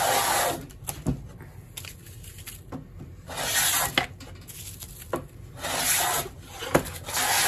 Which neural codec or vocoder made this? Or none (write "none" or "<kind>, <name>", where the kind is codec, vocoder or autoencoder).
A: none